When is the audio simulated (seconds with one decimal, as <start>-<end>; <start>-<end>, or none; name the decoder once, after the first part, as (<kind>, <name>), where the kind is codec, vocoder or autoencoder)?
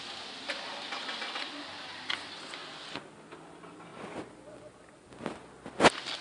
none